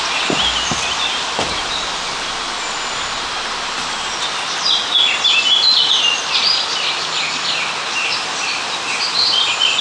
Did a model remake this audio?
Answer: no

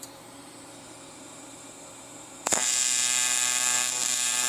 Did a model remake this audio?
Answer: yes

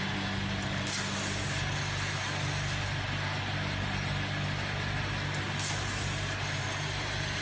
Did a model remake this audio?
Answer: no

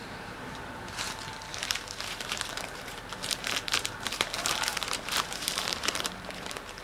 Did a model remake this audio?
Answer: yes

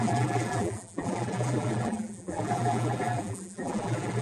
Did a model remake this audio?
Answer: yes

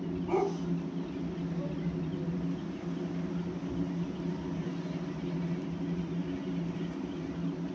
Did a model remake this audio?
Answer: no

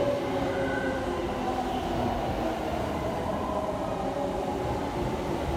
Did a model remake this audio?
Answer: no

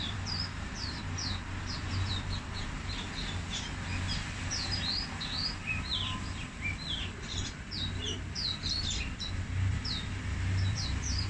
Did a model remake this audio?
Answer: yes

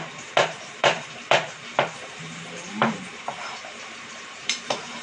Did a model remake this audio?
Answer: yes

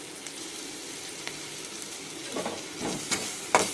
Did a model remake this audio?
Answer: yes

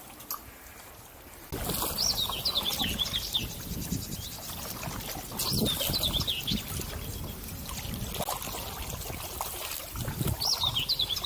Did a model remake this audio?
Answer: no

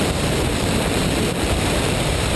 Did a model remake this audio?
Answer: yes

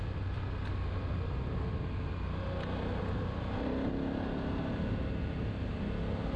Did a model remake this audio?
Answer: no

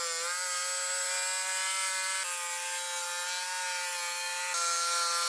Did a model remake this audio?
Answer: no